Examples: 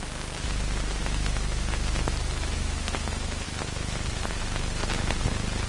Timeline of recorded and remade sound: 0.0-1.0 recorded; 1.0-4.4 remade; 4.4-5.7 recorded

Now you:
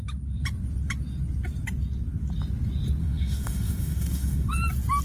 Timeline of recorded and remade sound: 0.0-3.0 recorded; 3.0-4.5 remade; 4.5-5.0 recorded

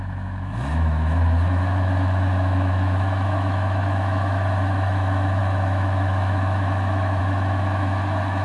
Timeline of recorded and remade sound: 0.0-8.4 remade

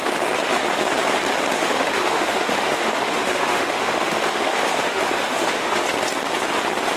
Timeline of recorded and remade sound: 0.0-1.6 recorded; 1.6-5.8 remade; 5.8-7.0 recorded

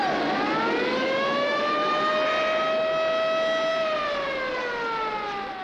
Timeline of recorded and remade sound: 0.0-1.0 recorded; 1.0-1.6 remade; 1.6-5.6 recorded